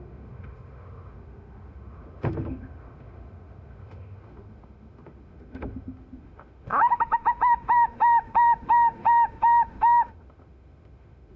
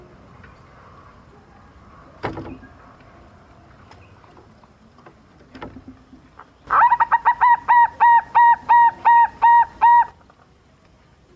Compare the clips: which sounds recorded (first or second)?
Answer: second